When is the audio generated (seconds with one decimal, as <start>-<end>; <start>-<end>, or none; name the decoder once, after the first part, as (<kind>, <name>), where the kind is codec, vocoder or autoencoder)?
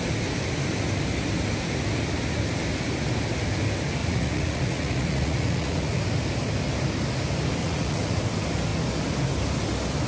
4.0-6.0 (vocoder, Vocos); 7.6-8.2